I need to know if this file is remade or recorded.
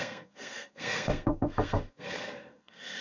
remade